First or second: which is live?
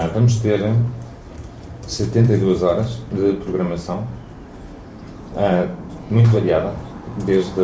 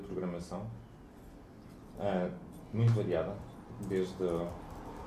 second